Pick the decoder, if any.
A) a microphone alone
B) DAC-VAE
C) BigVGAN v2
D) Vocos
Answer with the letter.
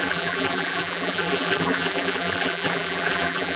C